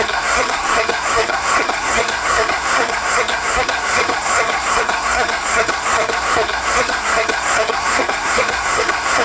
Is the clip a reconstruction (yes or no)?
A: yes